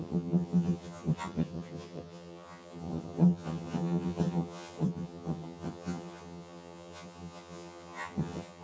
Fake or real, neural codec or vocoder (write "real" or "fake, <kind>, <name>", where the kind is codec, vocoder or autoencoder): fake, vocoder, HiFi-GAN